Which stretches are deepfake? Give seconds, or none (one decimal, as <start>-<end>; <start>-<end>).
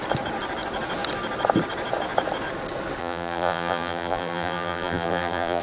3.0-5.6